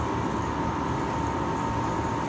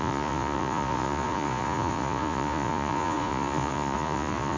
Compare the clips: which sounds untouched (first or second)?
first